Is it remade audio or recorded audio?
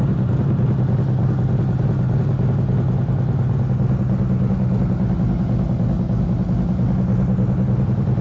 recorded